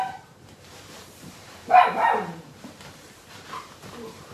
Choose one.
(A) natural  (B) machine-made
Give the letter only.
B